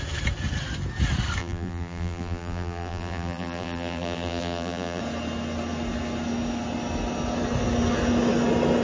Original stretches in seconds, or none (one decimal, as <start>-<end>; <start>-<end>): 0.0-1.4; 5.0-8.8